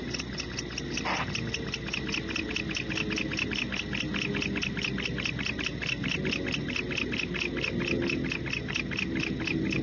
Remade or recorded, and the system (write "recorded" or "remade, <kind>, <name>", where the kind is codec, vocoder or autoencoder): recorded